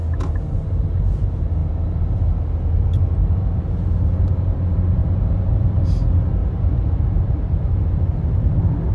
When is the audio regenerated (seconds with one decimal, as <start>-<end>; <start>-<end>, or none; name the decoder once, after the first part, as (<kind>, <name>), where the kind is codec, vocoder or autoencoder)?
5.0-5.8 (vocoder, BigVGAN v2); 6.4-8.3